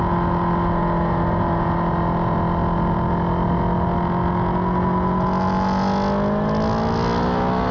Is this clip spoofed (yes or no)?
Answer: no